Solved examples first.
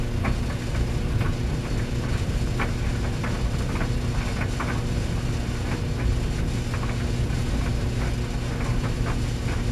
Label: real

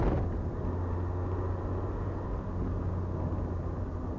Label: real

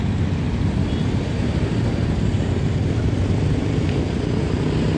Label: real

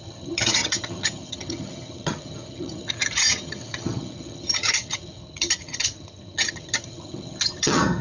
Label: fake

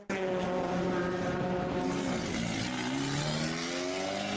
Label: real